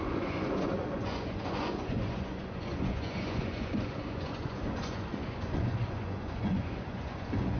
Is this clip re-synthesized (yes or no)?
yes